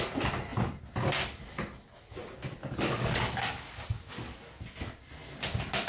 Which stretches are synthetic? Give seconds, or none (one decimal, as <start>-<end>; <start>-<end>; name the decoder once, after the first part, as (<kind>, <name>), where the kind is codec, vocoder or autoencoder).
2.6-4.6 (codec, DAC)